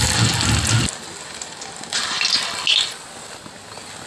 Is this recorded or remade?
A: recorded